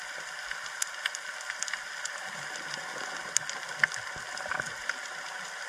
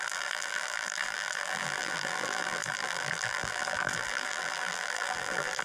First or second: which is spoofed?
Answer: second